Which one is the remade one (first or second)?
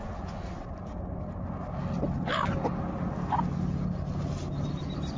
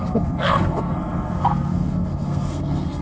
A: second